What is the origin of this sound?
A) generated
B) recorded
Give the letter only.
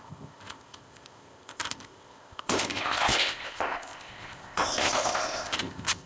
A